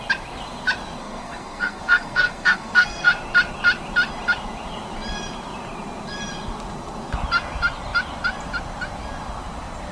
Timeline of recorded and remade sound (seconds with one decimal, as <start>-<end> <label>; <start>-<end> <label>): 0.0-1.0 recorded; 1.0-3.1 remade; 3.1-9.9 recorded